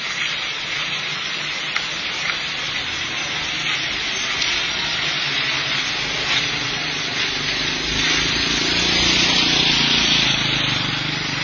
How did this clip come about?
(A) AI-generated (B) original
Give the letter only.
B